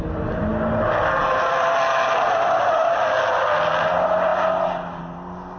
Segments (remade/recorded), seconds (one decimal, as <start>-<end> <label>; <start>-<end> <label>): 0.0-5.6 recorded